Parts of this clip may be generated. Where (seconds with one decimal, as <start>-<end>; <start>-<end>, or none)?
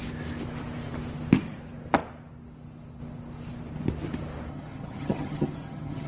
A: 4.5-6.1